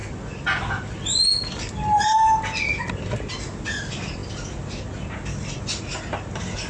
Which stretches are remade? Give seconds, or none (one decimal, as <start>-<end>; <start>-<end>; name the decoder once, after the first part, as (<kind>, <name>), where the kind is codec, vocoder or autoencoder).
none